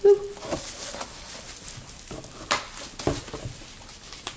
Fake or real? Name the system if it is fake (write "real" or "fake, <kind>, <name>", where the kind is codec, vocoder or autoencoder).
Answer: real